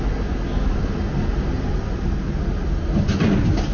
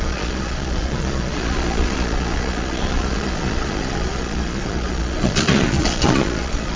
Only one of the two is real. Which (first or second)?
first